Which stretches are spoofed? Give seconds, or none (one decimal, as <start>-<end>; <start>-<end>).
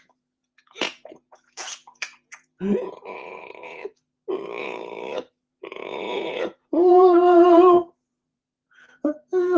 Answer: 0.0-3.8; 4.6-9.6